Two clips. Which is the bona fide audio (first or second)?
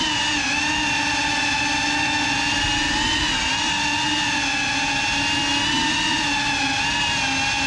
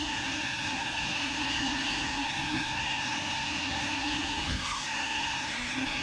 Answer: first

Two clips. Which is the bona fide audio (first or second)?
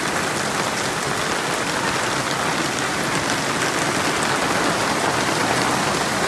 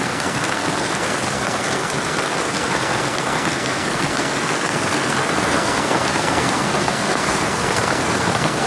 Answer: first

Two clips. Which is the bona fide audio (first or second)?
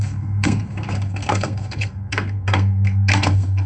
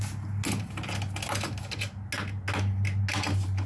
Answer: second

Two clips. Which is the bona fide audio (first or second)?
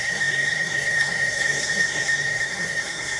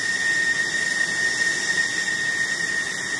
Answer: second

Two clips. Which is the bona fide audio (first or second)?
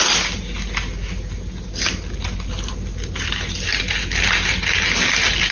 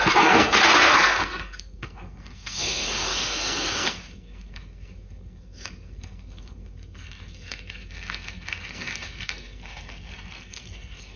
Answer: first